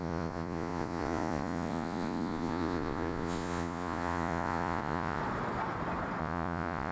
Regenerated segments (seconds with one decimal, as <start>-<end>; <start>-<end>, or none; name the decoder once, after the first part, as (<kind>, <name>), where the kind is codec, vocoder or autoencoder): 0.0-5.2 (vocoder, Vocos); 6.2-6.9